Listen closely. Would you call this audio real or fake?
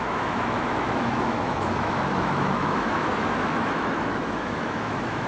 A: fake